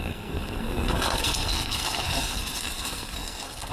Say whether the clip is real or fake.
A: fake